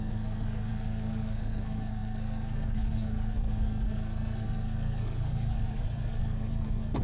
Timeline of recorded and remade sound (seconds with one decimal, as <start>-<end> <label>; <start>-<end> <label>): 0.0-7.0 remade

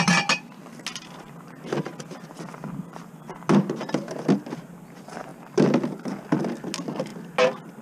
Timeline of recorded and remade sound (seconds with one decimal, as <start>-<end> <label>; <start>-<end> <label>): 0.0-7.8 recorded

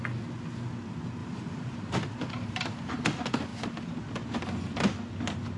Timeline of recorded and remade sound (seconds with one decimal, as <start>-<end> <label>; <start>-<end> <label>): 0.0-1.2 recorded; 1.2-2.9 remade; 2.9-3.5 recorded; 3.5-4.0 remade; 4.0-5.6 recorded